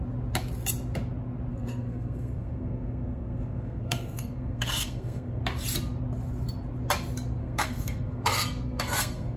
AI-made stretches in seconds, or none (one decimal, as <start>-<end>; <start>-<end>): 1.5-5.4; 7.4-9.4